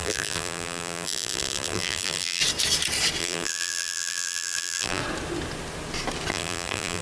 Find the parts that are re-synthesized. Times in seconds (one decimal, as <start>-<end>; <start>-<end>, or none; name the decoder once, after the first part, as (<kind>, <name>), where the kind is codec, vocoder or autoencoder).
0.0-2.4 (vocoder, BigVGAN v2); 3.2-5.0; 6.3-7.0